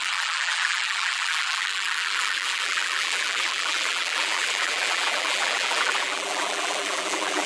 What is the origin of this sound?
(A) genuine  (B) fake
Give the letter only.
B